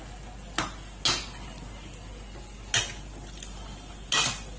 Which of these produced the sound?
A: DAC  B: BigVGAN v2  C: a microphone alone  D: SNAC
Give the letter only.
C